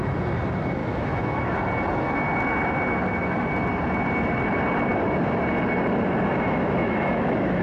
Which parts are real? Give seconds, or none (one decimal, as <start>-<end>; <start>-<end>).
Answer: 0.0-0.8; 1.5-6.3